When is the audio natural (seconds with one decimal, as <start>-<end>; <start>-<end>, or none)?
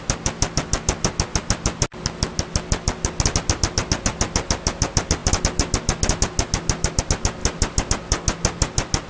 0.0-9.1